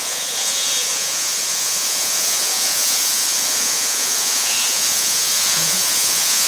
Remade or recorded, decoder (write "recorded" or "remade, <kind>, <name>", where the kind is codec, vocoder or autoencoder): remade, vocoder, Vocos